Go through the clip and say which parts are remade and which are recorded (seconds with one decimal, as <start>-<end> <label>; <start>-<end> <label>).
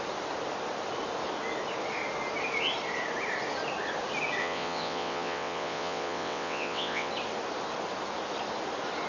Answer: 0.0-4.4 recorded; 4.4-7.1 remade; 7.1-9.1 recorded